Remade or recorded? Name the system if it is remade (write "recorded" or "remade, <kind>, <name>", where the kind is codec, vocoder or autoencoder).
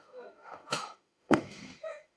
remade, autoencoder, DAC-VAE